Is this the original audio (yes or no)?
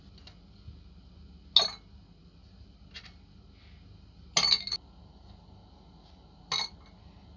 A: yes